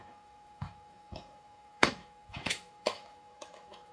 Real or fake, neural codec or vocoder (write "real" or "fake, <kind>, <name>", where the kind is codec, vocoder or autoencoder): fake, autoencoder, DAC-VAE